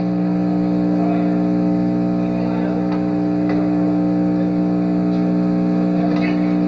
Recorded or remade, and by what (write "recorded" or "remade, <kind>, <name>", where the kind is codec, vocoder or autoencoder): recorded